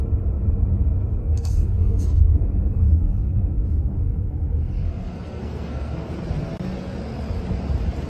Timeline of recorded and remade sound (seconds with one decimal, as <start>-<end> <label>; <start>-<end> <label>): 0.0-1.2 recorded; 1.2-6.1 remade; 6.1-8.1 recorded